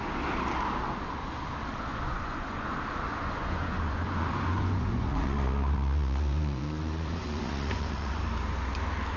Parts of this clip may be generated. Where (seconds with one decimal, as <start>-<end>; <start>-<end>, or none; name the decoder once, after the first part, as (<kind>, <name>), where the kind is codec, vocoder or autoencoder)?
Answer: 1.9-2.7 (vocoder, Vocos); 3.1-8.2